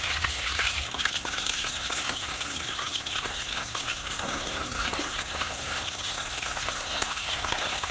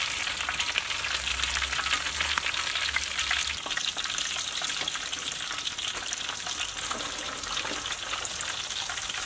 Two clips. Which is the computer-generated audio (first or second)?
first